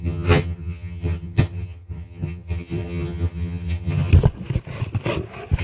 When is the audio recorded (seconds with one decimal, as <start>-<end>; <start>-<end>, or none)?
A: 4.1-5.6